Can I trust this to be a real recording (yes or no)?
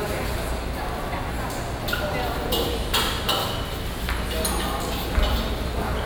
yes